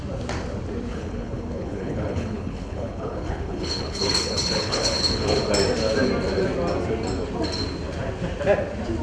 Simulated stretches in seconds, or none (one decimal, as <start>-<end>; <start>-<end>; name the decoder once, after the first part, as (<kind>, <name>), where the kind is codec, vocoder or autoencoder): 0.9-5.4 (codec, HILCodec)